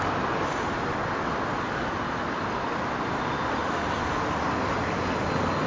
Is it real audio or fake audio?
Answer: real